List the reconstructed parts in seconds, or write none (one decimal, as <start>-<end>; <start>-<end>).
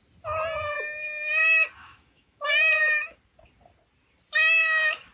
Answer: 1.8-2.7